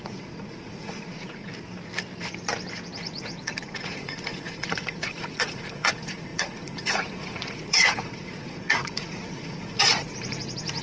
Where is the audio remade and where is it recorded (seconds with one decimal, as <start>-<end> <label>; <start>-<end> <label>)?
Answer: 0.0-1.5 remade; 1.5-3.0 recorded; 3.0-10.8 remade